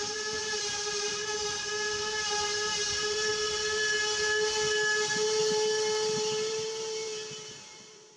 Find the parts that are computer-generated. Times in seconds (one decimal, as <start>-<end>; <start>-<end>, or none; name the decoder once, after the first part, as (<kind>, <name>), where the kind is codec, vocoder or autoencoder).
0.0-3.3 (vocoder, BigVGAN v2); 5.4-8.2